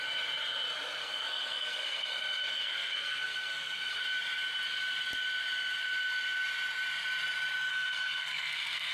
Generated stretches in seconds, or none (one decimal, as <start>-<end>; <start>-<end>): 1.0-4.0; 7.7-8.9